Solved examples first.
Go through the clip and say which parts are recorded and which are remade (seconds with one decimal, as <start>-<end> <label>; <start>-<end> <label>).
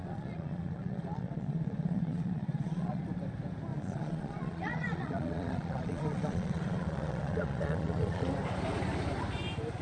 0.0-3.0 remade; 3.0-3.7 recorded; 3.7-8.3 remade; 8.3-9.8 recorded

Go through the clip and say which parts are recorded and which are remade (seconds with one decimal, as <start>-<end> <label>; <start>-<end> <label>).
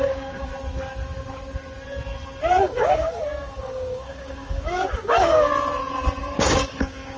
0.0-0.5 remade; 0.5-2.6 recorded; 2.6-5.5 remade; 5.5-6.2 recorded; 6.2-7.2 remade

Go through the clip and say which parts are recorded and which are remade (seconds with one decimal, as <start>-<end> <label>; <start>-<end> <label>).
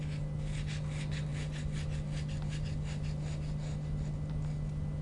0.0-5.0 recorded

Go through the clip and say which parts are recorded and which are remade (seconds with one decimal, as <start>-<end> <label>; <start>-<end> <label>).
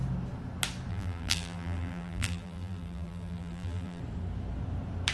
0.0-0.9 recorded; 0.9-4.0 remade; 4.0-5.1 recorded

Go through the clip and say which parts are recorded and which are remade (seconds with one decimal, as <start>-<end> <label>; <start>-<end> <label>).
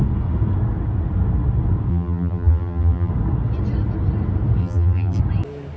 0.0-1.9 recorded; 1.9-3.1 remade; 3.1-4.6 recorded; 4.6-5.2 remade; 5.2-5.8 recorded